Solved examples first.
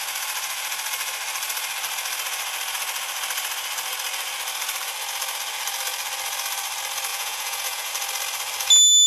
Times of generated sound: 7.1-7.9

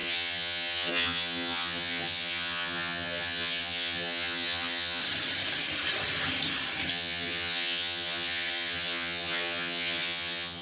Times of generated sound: 0.0-5.0; 6.9-10.6

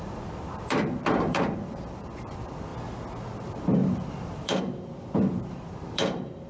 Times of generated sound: 0.0-2.7; 3.2-6.5

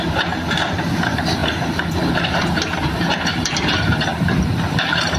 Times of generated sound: 0.0-5.2